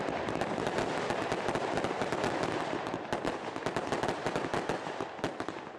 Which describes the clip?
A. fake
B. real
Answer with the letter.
B